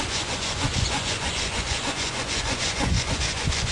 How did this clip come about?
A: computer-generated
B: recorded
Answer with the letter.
A